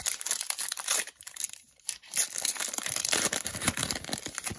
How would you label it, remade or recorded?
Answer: remade